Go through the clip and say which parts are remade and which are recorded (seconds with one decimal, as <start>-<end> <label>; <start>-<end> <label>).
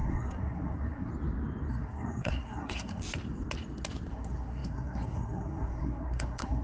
0.0-1.1 remade; 1.1-1.7 recorded; 1.7-3.0 remade; 3.0-4.1 recorded; 4.1-6.6 remade